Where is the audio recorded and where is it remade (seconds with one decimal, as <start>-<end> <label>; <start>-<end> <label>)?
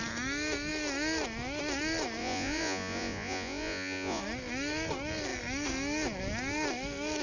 0.0-2.2 recorded; 2.2-4.2 remade; 4.2-7.2 recorded